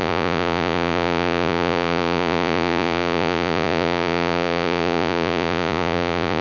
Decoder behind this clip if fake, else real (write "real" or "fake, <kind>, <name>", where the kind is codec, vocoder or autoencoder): fake, vocoder, Vocos